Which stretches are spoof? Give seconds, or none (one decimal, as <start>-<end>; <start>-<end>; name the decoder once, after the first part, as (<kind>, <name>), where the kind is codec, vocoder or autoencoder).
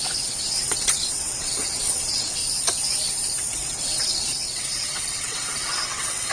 0.0-2.4 (vocoder, WaveNeXt); 3.5-6.3